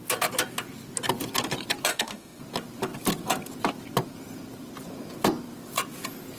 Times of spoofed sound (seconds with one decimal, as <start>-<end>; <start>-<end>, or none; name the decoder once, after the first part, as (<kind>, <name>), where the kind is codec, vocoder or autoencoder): 1.9-2.4 (autoencoder, DAC-VAE)